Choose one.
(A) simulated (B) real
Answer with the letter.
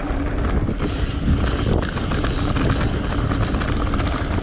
B